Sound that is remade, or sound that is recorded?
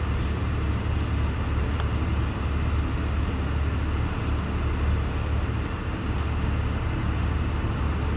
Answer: recorded